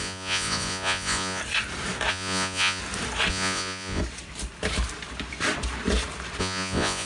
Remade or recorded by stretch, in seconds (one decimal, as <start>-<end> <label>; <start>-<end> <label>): 0.0-1.4 remade; 1.4-2.1 recorded; 2.1-2.8 remade; 2.8-3.3 recorded; 3.3-4.0 remade; 4.0-6.4 recorded; 6.4-7.1 remade